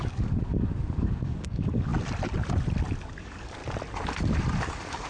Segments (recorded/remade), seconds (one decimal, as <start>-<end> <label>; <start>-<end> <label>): 0.0-1.9 remade; 1.9-3.0 recorded; 3.0-3.6 remade; 3.6-4.6 recorded; 4.6-5.1 remade